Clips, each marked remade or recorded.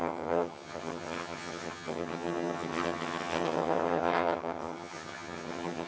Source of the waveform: remade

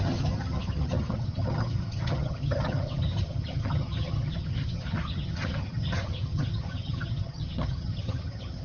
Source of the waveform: remade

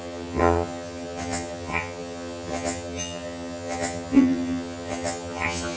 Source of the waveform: remade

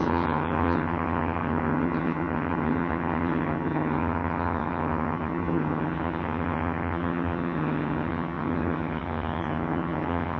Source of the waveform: remade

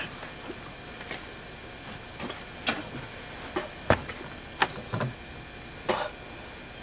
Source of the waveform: recorded